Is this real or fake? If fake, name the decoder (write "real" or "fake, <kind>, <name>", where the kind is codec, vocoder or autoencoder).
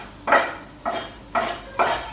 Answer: real